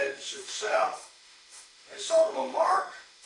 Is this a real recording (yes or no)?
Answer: no